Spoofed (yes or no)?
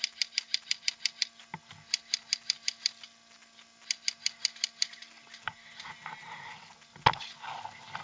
no